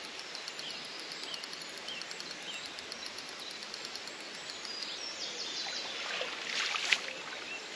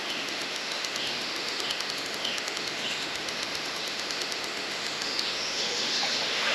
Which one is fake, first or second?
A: second